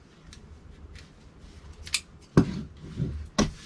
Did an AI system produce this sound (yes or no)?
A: no